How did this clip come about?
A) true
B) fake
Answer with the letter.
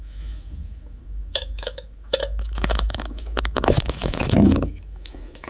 B